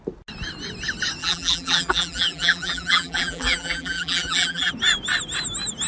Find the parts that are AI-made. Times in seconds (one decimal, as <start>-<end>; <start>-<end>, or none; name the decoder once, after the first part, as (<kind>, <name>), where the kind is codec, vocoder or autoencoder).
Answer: 1.2-4.7 (vocoder, BigVGAN v2)